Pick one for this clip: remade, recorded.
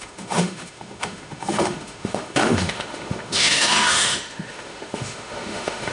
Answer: remade